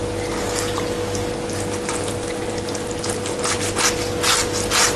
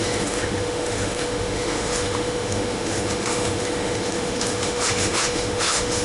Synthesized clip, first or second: second